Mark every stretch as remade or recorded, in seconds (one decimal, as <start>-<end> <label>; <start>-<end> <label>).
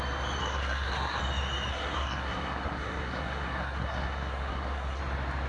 0.0-0.4 recorded; 0.4-1.2 remade; 1.2-1.7 recorded; 1.7-5.0 remade; 5.0-5.5 recorded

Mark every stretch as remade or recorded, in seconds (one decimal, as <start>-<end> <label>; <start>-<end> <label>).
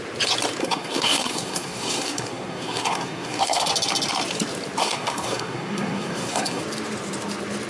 0.0-0.6 recorded; 0.6-3.7 remade; 3.7-4.8 recorded; 4.8-6.6 remade; 6.6-7.7 recorded